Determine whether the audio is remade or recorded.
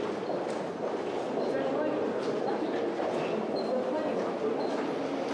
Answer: recorded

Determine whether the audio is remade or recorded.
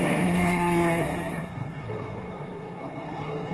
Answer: remade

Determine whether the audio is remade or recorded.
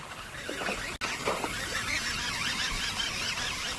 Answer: recorded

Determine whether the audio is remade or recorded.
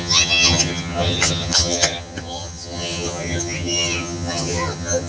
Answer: remade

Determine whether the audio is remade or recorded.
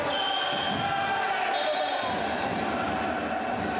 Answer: recorded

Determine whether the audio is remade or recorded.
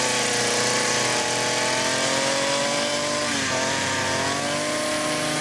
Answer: recorded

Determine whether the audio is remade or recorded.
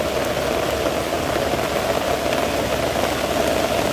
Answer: recorded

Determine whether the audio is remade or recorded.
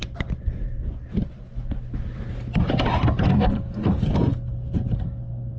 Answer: recorded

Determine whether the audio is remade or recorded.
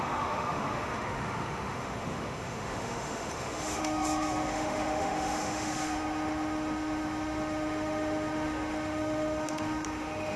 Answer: remade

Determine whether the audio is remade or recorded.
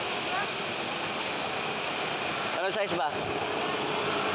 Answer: recorded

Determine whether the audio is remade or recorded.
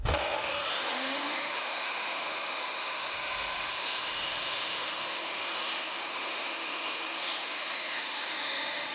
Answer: remade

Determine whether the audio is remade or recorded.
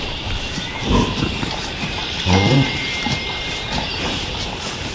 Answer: remade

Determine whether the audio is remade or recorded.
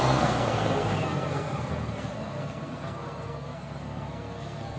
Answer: remade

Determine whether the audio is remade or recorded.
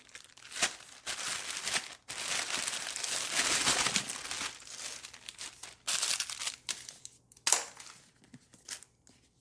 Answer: recorded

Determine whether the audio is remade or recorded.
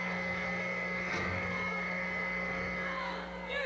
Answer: remade